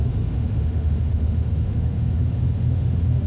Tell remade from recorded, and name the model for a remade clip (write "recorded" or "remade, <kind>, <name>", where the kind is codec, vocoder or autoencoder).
remade, autoencoder, DAC-VAE